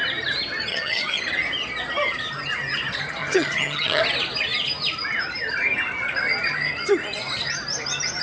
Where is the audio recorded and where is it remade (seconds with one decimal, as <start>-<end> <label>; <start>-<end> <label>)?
0.0-0.7 recorded; 0.7-1.2 remade; 1.2-3.2 recorded; 3.2-4.0 remade; 4.0-8.2 recorded